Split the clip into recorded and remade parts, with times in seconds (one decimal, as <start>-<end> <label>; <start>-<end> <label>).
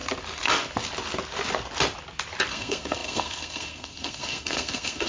0.0-2.5 recorded; 2.5-5.1 remade